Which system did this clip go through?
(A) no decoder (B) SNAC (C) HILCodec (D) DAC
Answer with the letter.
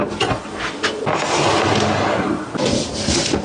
A